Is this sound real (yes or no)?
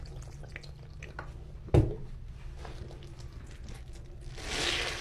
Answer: yes